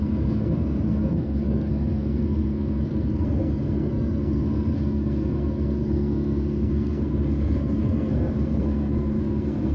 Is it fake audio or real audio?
fake